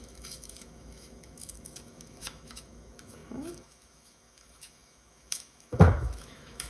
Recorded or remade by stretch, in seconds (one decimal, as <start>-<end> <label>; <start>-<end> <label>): 0.0-6.7 remade